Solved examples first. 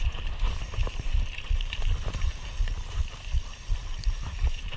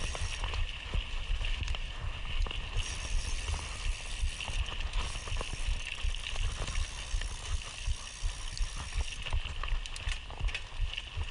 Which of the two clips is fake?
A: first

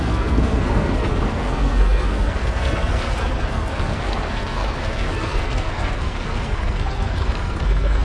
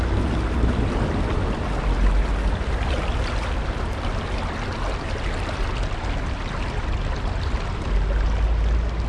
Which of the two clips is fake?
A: first